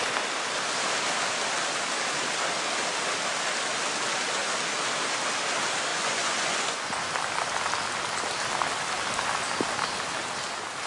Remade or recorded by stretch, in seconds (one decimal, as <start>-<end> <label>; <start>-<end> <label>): 0.0-5.9 recorded; 5.9-7.1 remade; 7.1-10.9 recorded